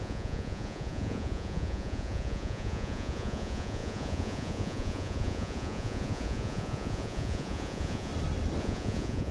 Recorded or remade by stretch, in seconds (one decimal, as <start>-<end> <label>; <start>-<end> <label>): 0.0-8.1 remade; 8.1-8.6 recorded; 8.6-9.3 remade